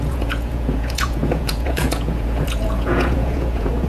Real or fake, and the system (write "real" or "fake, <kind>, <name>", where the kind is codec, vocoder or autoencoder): fake, vocoder, Vocos